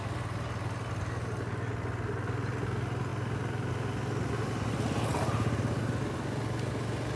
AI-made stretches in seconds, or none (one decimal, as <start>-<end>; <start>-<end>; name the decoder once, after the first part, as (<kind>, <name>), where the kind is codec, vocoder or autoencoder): none